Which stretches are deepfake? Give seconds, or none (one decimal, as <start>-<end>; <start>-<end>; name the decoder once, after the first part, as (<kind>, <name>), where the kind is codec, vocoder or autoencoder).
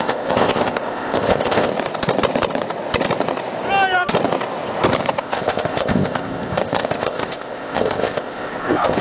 0.0-1.7 (codec, ZipCodec); 5.2-9.0